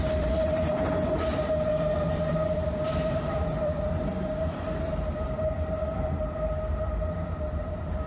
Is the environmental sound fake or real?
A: fake